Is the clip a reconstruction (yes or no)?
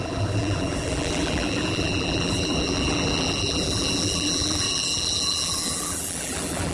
yes